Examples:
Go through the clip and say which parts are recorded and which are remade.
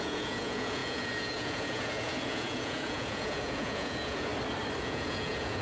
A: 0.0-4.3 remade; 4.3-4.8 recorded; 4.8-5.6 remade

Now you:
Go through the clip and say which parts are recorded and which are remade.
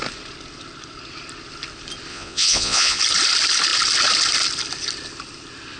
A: 0.0-2.1 recorded; 2.1-3.0 remade; 3.0-5.8 recorded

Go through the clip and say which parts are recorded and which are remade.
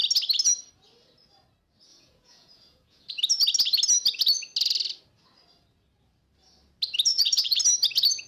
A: 0.0-1.9 recorded; 1.9-3.1 remade; 3.1-7.1 recorded; 7.1-7.6 remade; 7.6-8.3 recorded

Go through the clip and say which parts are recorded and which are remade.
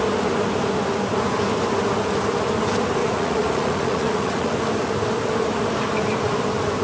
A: 0.0-3.0 recorded; 3.0-4.5 remade; 4.5-6.8 recorded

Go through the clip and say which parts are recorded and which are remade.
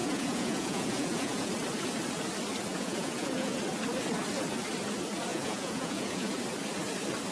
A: 0.0-1.5 remade; 1.5-2.7 recorded; 2.7-3.6 remade; 3.6-5.3 recorded; 5.3-6.4 remade; 6.4-7.3 recorded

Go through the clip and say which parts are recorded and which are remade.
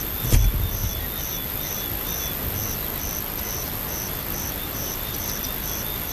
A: 0.0-6.1 recorded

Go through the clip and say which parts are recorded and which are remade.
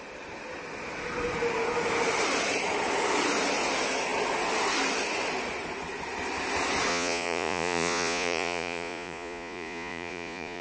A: 0.0-6.9 recorded; 6.9-10.6 remade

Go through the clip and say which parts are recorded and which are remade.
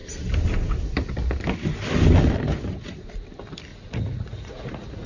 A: 0.0-3.7 recorded; 3.7-5.1 remade